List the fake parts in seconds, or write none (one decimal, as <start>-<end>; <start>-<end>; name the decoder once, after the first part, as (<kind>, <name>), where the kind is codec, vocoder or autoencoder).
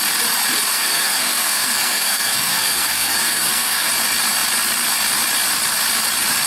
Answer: 0.7-3.9 (codec, SNAC)